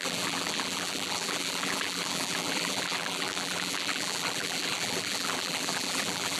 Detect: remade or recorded remade